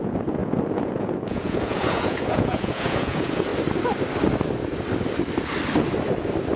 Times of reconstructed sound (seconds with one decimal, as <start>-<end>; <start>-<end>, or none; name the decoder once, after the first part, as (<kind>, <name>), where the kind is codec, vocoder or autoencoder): 0.0-3.5 (vocoder, Vocos)